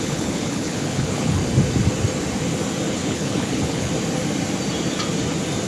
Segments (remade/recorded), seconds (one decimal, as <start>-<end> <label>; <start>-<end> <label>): 0.0-1.4 remade; 1.4-2.9 recorded; 2.9-3.9 remade; 3.9-5.7 recorded